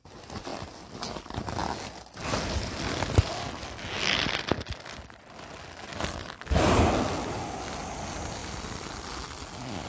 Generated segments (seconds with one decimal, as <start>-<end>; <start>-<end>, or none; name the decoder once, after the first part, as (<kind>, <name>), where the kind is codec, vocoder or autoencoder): none